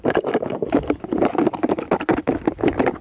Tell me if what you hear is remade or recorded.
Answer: remade